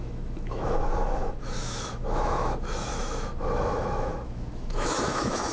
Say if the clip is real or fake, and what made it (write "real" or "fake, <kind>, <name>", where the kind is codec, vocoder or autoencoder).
fake, autoencoder, DAC-VAE